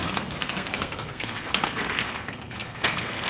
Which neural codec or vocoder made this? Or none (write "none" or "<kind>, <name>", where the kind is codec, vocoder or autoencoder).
codec, SNAC